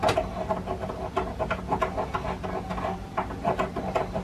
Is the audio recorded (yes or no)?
yes